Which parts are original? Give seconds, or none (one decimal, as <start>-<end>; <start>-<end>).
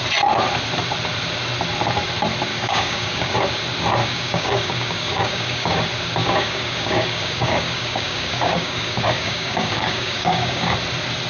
0.0-2.5; 3.3-4.0; 5.8-6.2; 10.7-11.3